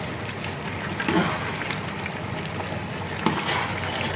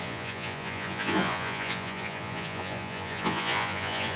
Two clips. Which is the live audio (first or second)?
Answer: first